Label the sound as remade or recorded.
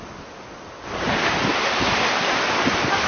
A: recorded